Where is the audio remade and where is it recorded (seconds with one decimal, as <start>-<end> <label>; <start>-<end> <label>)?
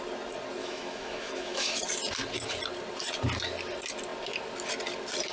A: 0.0-0.6 recorded; 0.6-1.8 remade; 1.8-5.3 recorded